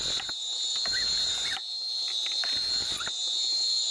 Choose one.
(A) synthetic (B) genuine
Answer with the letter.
B